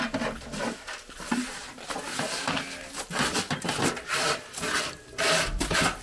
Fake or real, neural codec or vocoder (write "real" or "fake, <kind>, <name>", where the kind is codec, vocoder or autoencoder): real